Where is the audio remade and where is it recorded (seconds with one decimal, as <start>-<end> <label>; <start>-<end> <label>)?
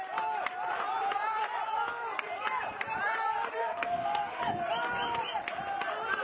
0.0-3.6 recorded; 3.6-4.4 remade; 4.4-6.2 recorded